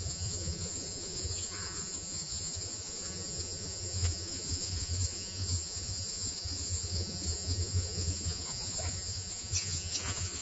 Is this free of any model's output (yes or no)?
no